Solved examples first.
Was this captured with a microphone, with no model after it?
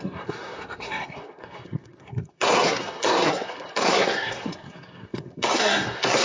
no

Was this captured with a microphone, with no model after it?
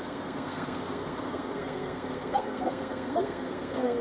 no